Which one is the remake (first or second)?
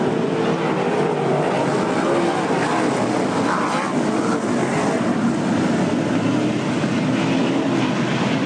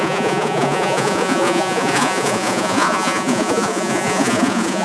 second